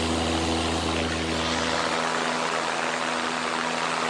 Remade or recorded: recorded